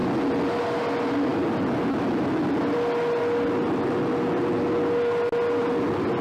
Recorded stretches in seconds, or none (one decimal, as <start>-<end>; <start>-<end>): 0.0-6.2